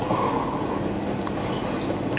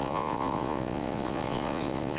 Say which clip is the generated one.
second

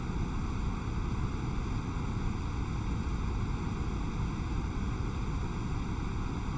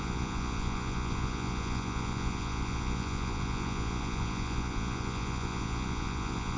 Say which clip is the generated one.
second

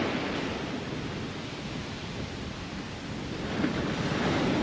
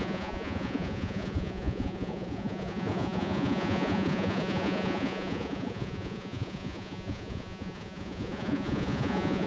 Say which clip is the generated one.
second